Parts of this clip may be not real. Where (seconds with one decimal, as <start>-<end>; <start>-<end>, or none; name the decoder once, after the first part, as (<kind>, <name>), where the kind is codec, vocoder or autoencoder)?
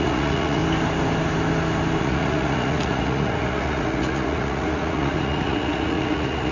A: 0.0-0.6 (vocoder, Vocos); 2.0-6.5